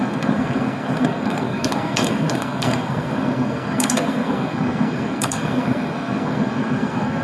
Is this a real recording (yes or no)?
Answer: no